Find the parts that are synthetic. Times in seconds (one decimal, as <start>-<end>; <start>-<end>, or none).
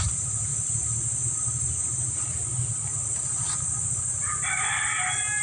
none